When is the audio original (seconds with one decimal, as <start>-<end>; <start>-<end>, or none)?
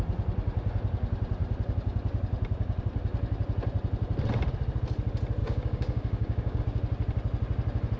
0.0-5.4; 6.6-8.0